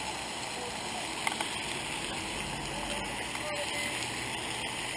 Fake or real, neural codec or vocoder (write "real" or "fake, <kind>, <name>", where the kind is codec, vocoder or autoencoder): real